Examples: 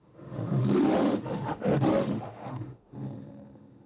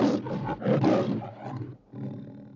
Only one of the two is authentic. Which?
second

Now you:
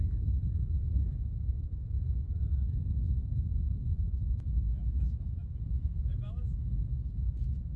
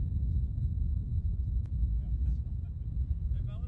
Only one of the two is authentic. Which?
second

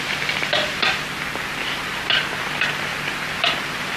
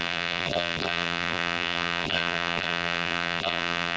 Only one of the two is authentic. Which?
first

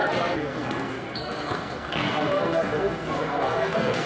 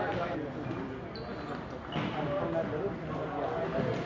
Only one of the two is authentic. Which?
second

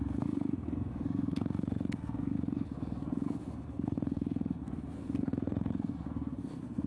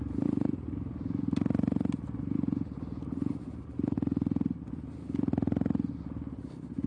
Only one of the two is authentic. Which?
second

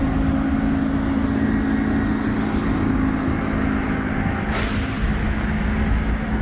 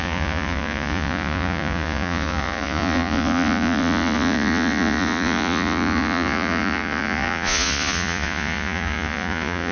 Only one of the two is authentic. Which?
first